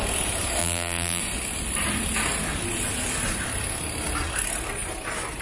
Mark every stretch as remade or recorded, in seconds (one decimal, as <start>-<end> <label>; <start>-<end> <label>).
0.0-0.6 recorded; 0.6-1.2 remade; 1.2-5.4 recorded